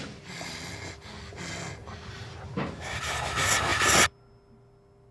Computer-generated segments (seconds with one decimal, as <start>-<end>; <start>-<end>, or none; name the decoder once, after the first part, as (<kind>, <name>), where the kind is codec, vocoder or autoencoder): 1.8-3.1 (vocoder, BigVGAN v2)